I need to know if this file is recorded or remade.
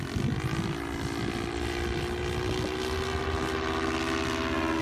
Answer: recorded